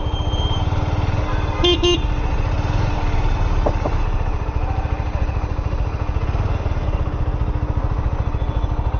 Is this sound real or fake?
real